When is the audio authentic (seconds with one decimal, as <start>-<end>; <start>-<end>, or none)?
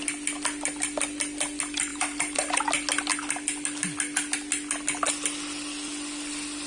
0.0-1.9; 2.6-6.7